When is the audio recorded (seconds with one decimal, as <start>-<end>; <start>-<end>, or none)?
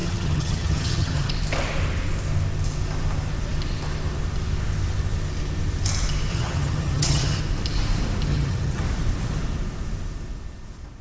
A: 1.3-6.3; 7.4-8.3; 8.8-11.0